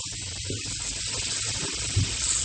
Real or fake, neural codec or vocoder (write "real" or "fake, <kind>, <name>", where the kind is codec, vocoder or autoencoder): real